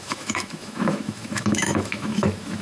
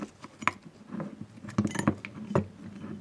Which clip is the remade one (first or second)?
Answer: first